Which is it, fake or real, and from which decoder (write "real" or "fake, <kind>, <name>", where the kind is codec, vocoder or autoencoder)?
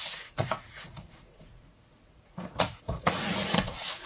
fake, vocoder, Vocos